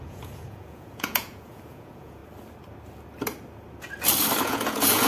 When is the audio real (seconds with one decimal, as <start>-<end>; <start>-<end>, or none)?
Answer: 2.2-4.4